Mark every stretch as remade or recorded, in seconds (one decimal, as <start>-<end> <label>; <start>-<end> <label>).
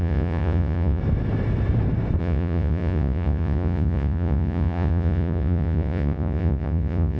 0.0-1.0 remade; 1.0-2.2 recorded; 2.2-7.2 remade